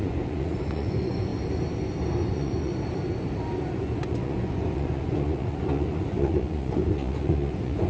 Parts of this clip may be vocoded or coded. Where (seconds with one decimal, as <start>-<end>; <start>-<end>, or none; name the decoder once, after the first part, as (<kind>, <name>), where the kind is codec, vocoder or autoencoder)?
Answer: 0.0-1.3 (vocoder, Vocos); 2.2-2.7; 3.7-7.9

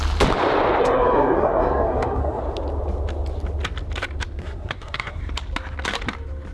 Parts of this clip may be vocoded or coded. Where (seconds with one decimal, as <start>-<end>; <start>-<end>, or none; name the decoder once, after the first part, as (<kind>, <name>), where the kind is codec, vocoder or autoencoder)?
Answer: 0.8-2.4 (codec, SNAC); 4.4-5.2

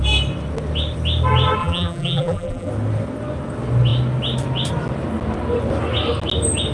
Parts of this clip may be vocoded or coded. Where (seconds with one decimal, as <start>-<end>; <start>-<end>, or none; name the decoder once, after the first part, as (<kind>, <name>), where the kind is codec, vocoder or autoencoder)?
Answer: 1.6-2.7 (vocoder, BigVGAN v2)

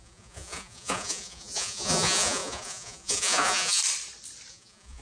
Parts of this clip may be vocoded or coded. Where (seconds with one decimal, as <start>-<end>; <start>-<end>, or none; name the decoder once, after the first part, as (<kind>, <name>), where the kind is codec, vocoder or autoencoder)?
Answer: 0.0-3.8 (vocoder, Vocos); 4.5-5.0